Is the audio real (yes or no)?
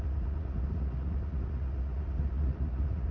no